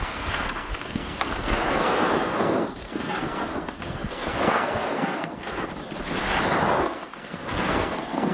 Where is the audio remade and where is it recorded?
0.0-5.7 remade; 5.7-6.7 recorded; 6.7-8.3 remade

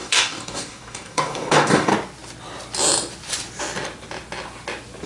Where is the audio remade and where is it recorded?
0.0-1.9 remade; 1.9-5.1 recorded

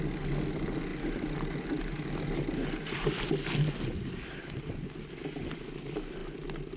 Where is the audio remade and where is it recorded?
0.0-6.8 recorded

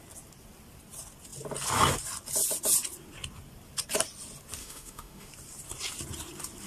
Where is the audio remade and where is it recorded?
0.0-4.6 recorded; 4.6-5.3 remade; 5.3-6.7 recorded